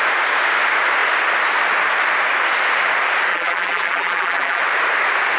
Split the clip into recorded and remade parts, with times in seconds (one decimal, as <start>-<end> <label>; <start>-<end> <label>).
0.0-3.3 recorded; 3.3-4.6 remade; 4.6-5.4 recorded